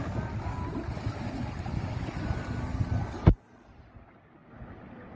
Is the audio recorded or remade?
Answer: recorded